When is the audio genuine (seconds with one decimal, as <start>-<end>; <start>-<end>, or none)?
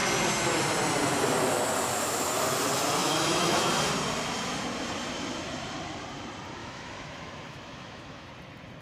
0.0-3.0; 3.7-6.6; 8.3-8.8